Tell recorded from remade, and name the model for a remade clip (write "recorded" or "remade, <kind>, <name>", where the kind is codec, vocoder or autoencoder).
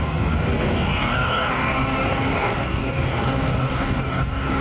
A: remade, codec, DAC